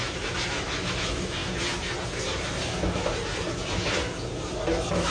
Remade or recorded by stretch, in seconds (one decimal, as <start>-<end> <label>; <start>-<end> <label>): 0.0-0.6 recorded; 0.6-1.4 remade; 1.4-4.5 recorded; 4.5-5.1 remade